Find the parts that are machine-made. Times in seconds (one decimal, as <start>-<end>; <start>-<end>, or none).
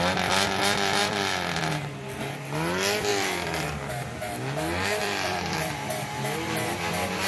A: 1.0-1.7; 3.1-3.7; 5.0-5.7